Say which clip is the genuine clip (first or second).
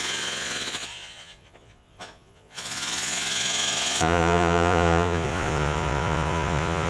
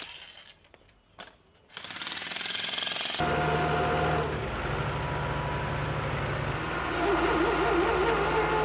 second